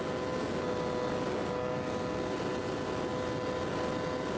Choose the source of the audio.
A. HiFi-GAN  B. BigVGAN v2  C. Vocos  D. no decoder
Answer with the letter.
D